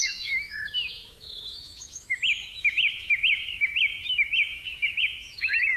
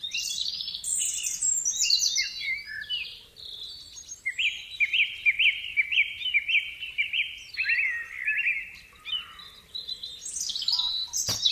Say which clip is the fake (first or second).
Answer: first